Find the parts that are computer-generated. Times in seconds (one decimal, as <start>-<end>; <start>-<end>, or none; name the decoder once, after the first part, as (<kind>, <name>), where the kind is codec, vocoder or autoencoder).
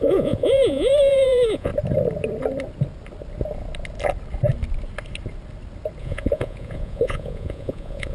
0.0-1.7 (vocoder, Vocos); 6.0-8.1